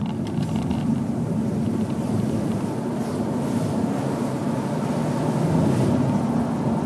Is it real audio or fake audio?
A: real